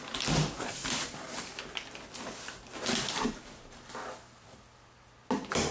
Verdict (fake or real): real